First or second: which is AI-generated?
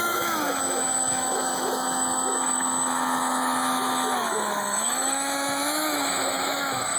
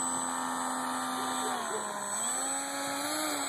first